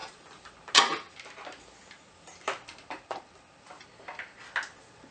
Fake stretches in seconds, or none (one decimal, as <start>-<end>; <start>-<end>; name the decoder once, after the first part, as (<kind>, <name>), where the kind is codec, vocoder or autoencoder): none